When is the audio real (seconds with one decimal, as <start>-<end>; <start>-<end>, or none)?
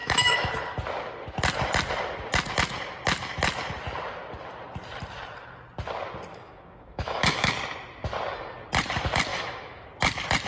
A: 0.5-6.3; 7.5-9.3; 9.9-10.5